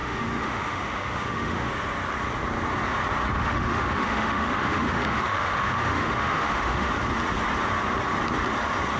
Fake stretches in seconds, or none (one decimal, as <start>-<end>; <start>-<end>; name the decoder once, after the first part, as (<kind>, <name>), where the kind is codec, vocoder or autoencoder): 0.0-1.7 (autoencoder, DAC-VAE); 3.4-6.9